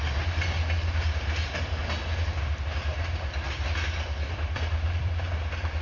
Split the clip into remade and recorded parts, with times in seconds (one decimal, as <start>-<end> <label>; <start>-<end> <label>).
0.0-1.8 remade; 1.8-4.2 recorded; 4.2-5.8 remade